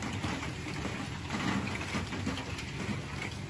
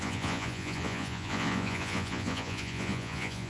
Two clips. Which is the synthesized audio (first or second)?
second